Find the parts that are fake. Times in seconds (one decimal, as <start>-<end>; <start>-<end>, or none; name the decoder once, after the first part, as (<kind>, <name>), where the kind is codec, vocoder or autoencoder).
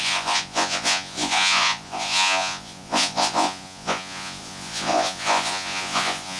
0.0-6.4 (vocoder, Vocos)